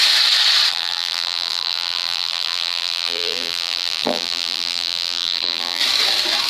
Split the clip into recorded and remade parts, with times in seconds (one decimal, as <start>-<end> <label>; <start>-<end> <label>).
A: 0.0-0.7 recorded; 0.7-5.8 remade; 5.8-6.5 recorded